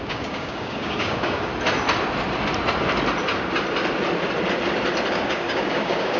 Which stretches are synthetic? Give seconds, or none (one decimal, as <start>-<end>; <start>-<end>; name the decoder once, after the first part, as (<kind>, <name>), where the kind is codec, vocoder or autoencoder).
0.0-1.5 (codec, DAC); 5.1-6.2